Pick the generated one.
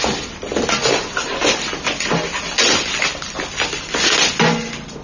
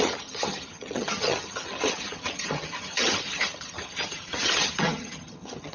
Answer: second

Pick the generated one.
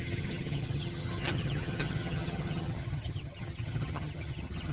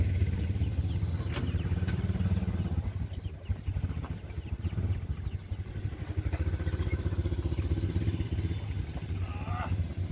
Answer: first